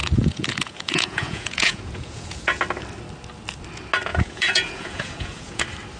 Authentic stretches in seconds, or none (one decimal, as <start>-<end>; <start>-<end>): 2.6-4.1; 5.6-6.0